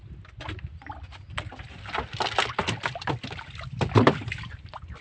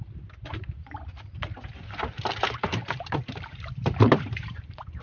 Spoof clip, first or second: second